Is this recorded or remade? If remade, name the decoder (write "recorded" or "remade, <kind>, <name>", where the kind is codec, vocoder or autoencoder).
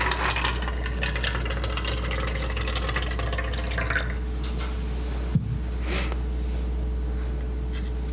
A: recorded